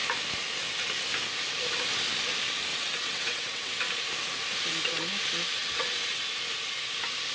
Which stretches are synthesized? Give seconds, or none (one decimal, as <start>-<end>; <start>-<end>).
2.7-3.8; 5.6-6.2